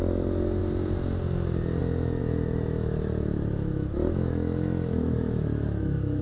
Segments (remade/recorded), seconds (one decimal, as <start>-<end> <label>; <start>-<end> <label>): 0.0-2.2 recorded; 2.2-6.2 remade